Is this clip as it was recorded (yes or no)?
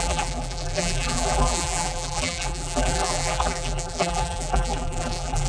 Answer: no